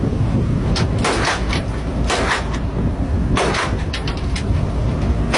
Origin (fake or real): real